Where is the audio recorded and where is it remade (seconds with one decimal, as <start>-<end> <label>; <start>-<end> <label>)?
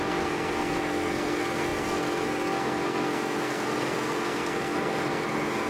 0.0-5.7 remade